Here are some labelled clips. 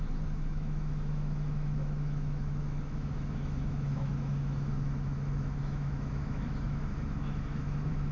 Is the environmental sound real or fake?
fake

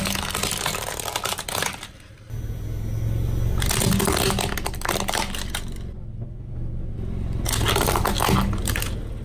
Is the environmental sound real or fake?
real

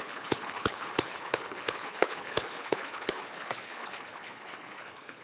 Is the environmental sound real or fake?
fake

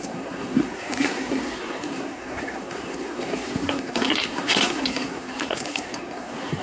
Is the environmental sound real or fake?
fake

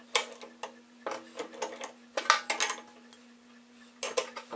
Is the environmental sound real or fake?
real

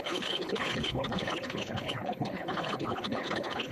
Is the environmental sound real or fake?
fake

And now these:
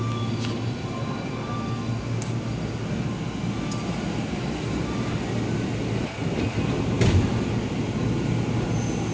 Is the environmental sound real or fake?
real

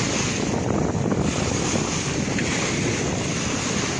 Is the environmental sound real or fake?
real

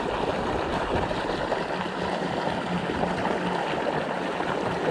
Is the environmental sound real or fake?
real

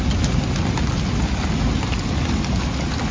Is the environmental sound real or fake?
real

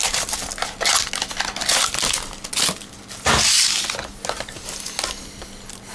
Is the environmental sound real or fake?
real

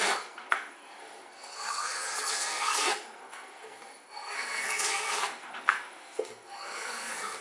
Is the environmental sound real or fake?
fake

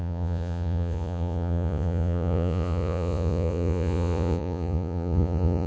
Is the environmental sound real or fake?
fake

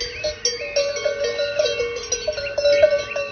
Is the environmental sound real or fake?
real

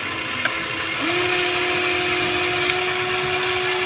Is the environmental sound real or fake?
real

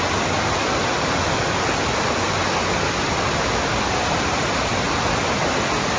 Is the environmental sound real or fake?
real